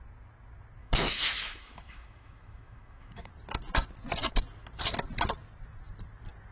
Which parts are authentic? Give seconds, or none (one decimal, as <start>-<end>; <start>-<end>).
0.0-0.8; 3.3-6.5